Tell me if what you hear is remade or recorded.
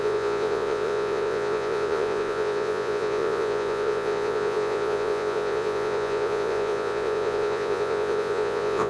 remade